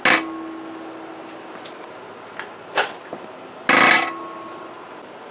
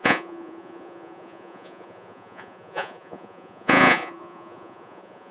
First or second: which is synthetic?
second